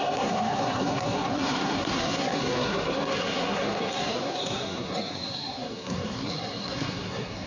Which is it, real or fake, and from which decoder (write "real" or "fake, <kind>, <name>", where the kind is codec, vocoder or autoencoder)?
fake, codec, SNAC